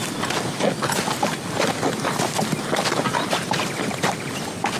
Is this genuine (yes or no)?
yes